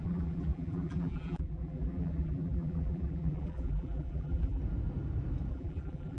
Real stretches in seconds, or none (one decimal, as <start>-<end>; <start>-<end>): 4.6-5.5